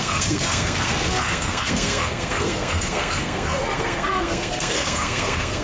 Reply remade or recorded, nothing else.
remade